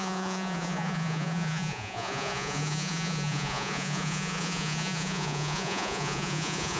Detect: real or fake fake